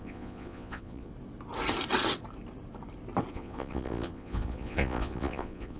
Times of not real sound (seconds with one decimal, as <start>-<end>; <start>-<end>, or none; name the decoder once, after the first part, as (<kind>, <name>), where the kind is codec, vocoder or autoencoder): 0.0-1.1 (vocoder, Vocos); 3.3-5.8